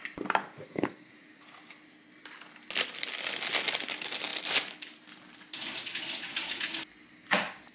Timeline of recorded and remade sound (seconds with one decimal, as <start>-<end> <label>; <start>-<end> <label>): 0.0-0.4 recorded; 0.4-1.1 remade; 1.1-7.7 recorded

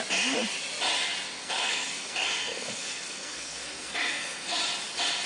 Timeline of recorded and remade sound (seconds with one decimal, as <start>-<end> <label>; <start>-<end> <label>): 0.0-1.4 recorded; 1.4-4.6 remade; 4.6-5.3 recorded

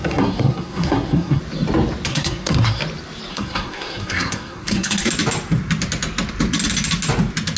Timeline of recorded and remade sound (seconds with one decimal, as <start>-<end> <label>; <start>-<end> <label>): 0.0-1.4 remade; 1.4-2.1 recorded; 2.1-2.8 remade; 2.8-3.3 recorded; 3.3-5.1 remade; 5.1-7.6 recorded

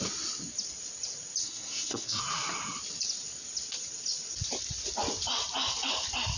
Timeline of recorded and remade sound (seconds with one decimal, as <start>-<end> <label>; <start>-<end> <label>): 0.0-1.4 recorded; 1.4-2.2 remade; 2.2-6.4 recorded

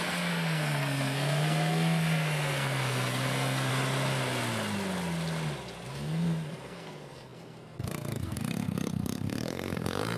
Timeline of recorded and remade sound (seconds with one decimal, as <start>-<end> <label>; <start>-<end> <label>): 0.0-3.7 remade; 3.7-5.9 recorded; 5.9-10.2 remade